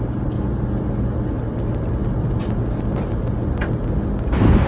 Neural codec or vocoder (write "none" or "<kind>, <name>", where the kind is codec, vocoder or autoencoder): none